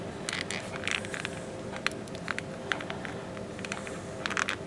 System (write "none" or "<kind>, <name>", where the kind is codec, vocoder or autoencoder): none